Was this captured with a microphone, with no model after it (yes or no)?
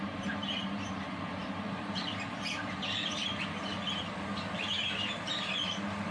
no